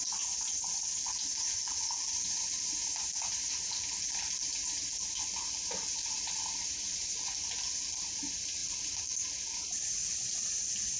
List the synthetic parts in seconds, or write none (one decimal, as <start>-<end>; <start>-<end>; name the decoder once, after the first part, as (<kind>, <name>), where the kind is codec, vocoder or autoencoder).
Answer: none